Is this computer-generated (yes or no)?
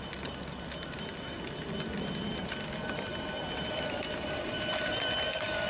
no